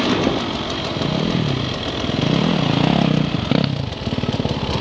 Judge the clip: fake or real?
fake